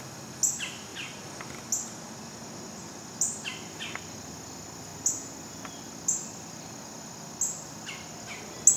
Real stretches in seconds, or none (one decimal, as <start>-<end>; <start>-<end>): 0.0-8.8